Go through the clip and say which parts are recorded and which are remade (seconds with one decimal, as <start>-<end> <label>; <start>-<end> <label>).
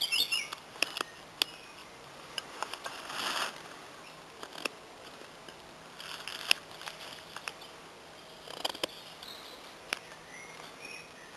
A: 0.0-1.8 recorded; 1.8-3.1 remade; 3.1-11.4 recorded